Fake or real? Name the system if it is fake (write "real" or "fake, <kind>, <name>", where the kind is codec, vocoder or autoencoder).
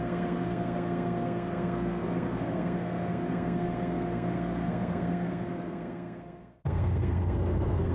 fake, codec, SNAC